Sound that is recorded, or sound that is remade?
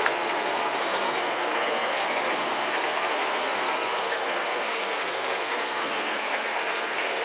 remade